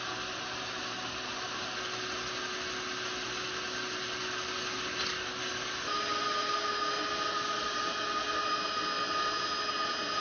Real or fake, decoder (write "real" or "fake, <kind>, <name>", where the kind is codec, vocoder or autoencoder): real